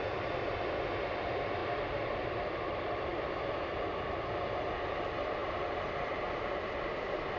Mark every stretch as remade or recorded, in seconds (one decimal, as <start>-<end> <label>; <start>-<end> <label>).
0.0-7.4 recorded